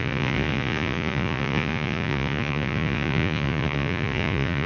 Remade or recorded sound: remade